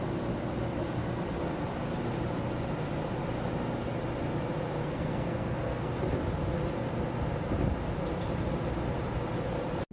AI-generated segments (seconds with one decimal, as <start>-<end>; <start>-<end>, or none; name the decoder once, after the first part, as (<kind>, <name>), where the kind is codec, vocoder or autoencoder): 4.8-5.9 (codec, SNAC)